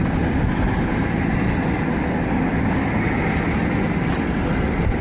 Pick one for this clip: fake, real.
real